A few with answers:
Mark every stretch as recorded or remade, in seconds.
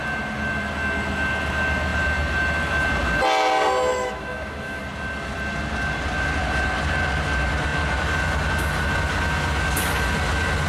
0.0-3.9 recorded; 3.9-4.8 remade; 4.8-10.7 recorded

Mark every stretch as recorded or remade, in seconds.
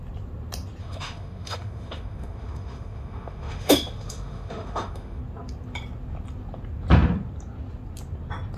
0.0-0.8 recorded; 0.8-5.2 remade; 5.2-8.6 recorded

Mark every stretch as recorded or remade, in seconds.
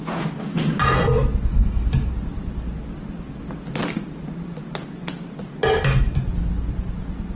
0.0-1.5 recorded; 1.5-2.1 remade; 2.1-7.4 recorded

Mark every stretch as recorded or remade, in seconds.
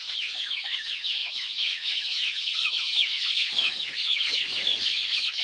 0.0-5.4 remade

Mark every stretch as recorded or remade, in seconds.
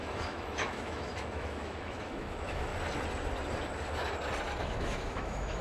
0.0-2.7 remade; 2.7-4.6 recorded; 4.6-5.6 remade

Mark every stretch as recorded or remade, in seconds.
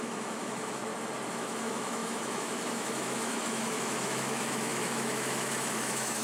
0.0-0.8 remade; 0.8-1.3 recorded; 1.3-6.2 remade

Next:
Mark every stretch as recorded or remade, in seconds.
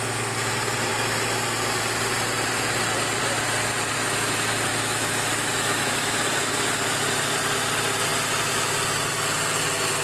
0.0-4.7 recorded; 4.7-6.2 remade; 6.2-10.0 recorded